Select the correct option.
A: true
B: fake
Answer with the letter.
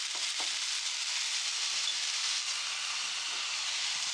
A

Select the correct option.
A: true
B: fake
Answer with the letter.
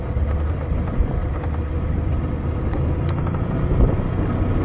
A